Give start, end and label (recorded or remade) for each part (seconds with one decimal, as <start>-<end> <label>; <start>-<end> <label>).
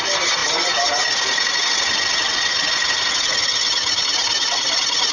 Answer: 0.0-5.1 recorded